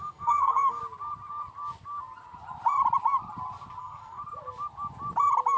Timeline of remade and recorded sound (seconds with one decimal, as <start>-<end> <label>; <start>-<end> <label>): 0.0-0.8 remade; 0.8-3.8 recorded; 3.8-4.2 remade; 4.2-5.6 recorded